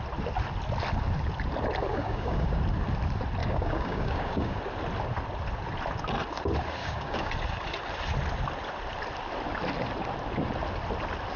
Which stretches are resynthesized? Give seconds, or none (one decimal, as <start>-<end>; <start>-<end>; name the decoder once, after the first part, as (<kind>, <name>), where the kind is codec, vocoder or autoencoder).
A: 1.9-2.6 (codec, DAC); 3.4-4.6; 6.8-7.3